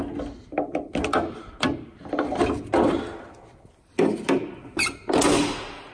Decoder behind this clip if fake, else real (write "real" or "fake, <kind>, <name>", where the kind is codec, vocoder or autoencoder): real